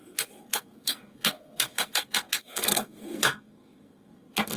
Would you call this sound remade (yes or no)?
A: yes